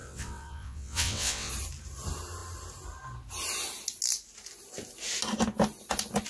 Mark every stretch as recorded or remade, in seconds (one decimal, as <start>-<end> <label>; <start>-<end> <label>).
0.0-1.5 remade; 1.5-6.3 recorded